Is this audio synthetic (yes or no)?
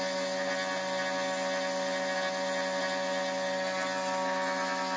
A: no